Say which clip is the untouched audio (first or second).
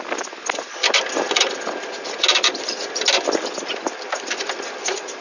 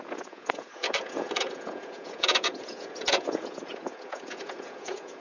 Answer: first